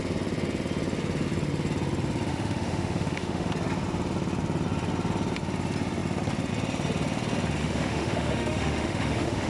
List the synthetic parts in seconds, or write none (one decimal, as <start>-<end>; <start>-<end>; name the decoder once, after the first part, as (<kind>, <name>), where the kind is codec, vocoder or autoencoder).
2.3-3.5 (autoencoder, DAC-VAE); 7.6-9.5